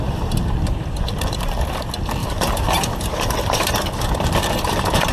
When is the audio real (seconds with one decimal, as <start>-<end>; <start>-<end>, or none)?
0.0-2.2; 3.7-5.1